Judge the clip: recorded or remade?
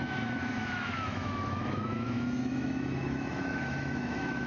remade